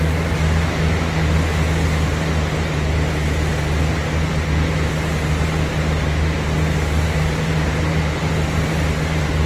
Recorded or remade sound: recorded